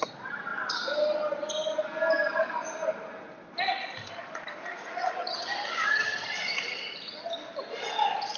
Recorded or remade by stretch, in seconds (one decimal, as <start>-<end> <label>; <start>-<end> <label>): 0.0-8.4 recorded